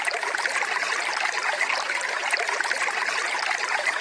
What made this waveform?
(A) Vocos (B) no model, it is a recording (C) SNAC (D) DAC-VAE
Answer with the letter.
B